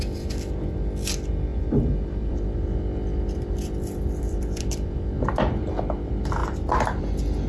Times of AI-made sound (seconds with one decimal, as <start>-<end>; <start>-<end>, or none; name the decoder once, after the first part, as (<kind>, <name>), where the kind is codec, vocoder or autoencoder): 1.5-5.2 (vocoder, BigVGAN v2); 6.4-7.0